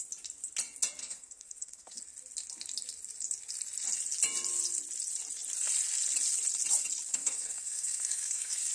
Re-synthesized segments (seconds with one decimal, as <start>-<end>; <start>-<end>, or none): 1.0-2.0; 7.1-8.7

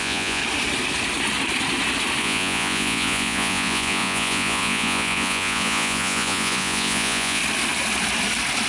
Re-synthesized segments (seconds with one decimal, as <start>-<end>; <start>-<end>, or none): 0.0-0.4; 2.2-7.4

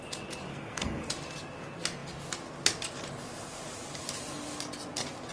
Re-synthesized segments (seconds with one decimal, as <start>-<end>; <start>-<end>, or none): 0.5-1.1

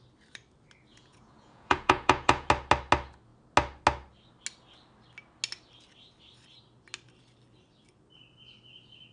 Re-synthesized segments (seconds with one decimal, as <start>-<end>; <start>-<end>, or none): 0.9-2.5

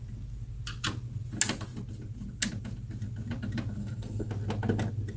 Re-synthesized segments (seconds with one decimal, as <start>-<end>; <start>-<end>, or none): 3.8-4.3

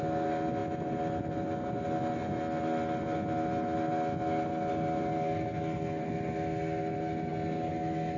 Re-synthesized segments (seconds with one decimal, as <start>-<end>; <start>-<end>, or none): none

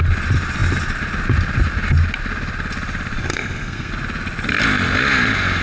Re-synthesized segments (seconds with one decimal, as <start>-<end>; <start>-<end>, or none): 3.3-3.9